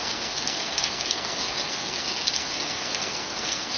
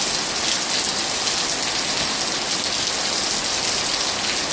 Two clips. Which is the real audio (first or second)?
second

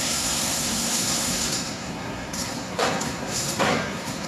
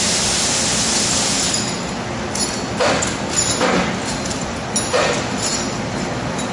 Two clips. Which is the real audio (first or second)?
second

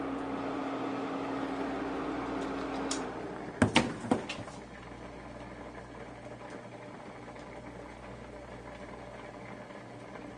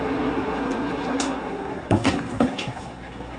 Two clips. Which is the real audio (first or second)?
first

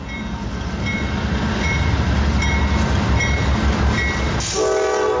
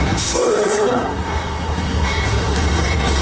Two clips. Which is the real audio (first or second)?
first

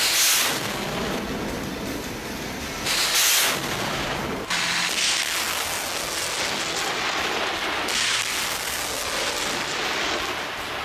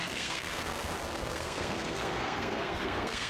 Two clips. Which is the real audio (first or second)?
first